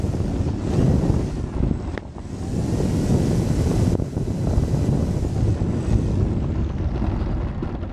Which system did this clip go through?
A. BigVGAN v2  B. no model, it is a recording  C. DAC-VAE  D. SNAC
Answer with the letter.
B